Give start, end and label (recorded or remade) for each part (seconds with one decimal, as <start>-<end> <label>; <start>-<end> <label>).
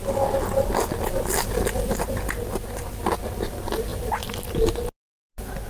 0.0-3.9 recorded; 3.9-4.5 remade; 4.5-5.7 recorded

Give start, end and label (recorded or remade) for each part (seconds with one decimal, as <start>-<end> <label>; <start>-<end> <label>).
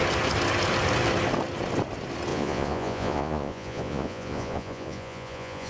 0.0-2.3 recorded; 2.3-5.7 remade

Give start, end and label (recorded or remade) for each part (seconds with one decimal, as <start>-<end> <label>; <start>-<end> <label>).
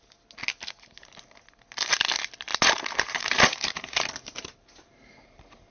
0.0-2.5 recorded; 2.5-5.7 remade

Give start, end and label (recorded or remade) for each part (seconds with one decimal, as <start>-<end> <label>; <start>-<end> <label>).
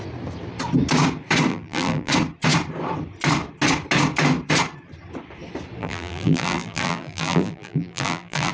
0.0-1.5 recorded; 1.5-2.1 remade; 2.1-5.8 recorded; 5.8-8.5 remade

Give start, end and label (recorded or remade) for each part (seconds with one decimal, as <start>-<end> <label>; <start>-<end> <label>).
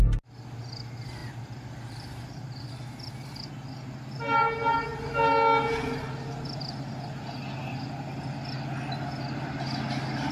0.0-1.2 recorded; 1.2-2.7 remade; 2.7-10.3 recorded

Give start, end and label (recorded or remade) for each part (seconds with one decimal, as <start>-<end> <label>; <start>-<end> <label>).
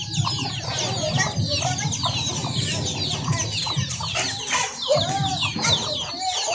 0.0-6.5 recorded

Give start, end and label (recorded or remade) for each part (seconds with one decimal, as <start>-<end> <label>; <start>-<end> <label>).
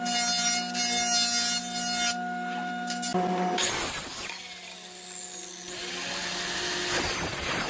0.0-7.7 recorded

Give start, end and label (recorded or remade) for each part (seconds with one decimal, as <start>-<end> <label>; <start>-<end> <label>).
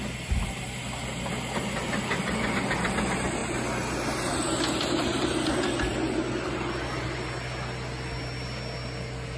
0.0-9.4 recorded